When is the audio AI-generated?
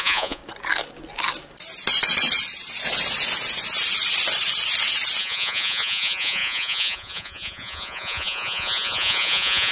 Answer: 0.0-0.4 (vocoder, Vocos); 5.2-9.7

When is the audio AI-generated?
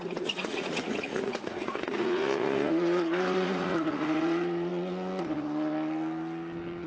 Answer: 0.0-4.7 (vocoder, Vocos)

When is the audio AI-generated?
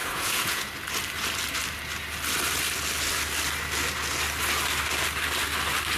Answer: 0.0-0.7 (vocoder, Vocos)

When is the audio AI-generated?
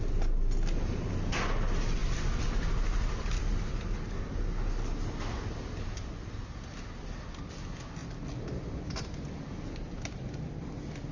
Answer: none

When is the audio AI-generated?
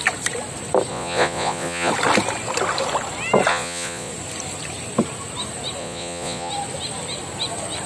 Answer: 0.9-1.9 (vocoder, Vocos); 3.5-4.1; 5.8-6.5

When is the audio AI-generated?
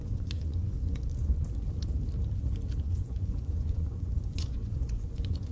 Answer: 0.0-1.1 (vocoder, Vocos); 2.8-5.5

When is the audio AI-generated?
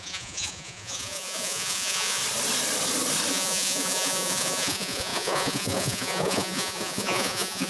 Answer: 0.0-2.2 (vocoder, Vocos); 3.3-7.7